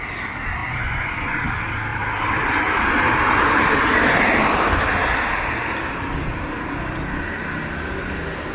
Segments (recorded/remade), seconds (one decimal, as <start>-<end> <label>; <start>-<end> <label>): 0.0-0.6 recorded; 0.6-1.4 remade; 1.4-8.5 recorded